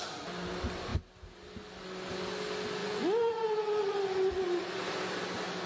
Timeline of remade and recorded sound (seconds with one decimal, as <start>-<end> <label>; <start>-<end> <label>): 0.0-2.8 recorded; 2.8-4.3 remade; 4.3-5.7 recorded